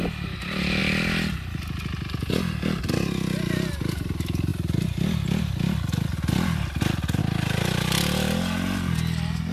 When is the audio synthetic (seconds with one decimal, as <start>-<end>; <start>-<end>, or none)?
none